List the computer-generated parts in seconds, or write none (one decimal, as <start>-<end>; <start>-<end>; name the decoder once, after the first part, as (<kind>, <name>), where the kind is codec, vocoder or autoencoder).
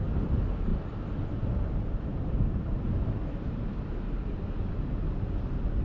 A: 2.1-4.7 (vocoder, BigVGAN v2)